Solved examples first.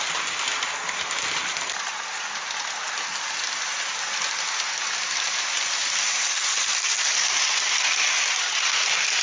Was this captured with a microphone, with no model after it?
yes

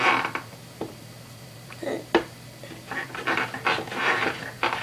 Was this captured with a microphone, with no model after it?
no